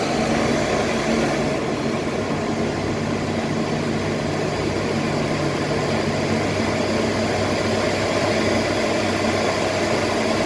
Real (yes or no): yes